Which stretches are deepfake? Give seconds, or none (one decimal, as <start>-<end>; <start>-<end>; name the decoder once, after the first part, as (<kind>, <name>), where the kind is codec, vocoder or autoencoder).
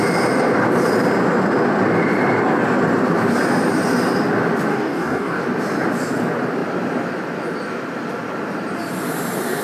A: 4.7-5.4 (codec, DAC)